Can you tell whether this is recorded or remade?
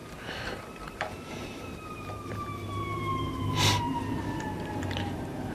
remade